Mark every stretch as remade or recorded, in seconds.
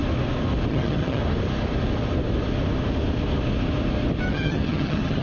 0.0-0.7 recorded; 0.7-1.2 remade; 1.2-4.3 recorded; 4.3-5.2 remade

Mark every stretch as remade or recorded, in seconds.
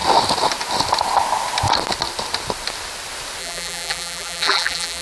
0.0-3.4 recorded; 3.4-5.0 remade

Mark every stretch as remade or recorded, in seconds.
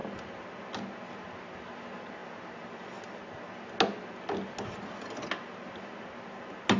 0.0-6.8 recorded